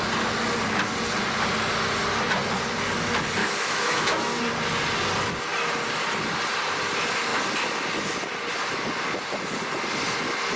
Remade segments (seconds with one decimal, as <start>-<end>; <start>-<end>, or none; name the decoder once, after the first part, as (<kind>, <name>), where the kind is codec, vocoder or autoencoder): 3.4-4.4 (autoencoder, DAC-VAE)